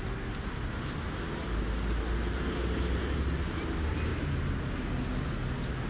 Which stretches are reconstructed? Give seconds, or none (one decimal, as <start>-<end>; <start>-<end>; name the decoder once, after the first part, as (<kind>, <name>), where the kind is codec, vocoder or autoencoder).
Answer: none